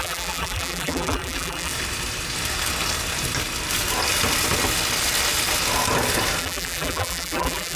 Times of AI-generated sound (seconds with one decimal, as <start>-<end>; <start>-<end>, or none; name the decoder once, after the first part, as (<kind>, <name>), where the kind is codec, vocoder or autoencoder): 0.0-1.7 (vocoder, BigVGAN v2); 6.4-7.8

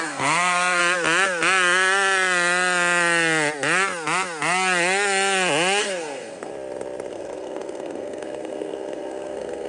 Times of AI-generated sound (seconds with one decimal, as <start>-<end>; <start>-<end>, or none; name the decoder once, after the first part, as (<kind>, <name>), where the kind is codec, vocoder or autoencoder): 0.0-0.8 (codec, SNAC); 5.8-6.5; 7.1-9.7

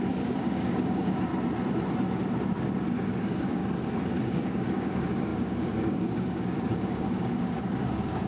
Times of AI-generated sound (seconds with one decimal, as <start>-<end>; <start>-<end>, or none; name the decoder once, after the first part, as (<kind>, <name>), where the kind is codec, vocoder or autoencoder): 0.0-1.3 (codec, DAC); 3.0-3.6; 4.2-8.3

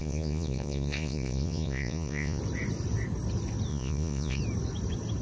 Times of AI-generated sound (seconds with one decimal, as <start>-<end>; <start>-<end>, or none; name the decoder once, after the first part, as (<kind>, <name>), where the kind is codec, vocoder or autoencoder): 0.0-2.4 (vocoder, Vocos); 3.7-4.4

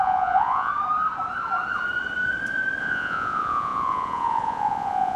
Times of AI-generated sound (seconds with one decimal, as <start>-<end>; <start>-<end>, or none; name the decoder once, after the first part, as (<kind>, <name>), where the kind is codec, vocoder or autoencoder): 0.0-0.7 (vocoder, Vocos); 2.8-5.2